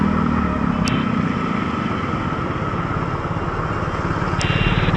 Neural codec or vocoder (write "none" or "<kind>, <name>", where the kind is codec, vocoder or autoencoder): none